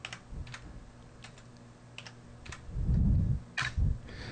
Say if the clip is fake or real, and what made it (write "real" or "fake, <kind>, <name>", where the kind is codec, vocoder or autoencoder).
real